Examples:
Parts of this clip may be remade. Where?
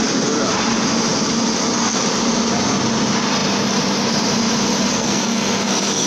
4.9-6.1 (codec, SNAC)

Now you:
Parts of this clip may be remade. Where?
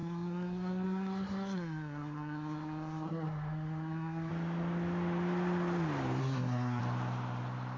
0.0-4.3 (codec, SNAC); 6.2-6.8